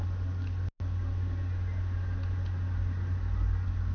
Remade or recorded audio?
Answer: recorded